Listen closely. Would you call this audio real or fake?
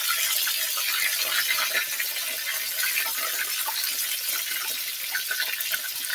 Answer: real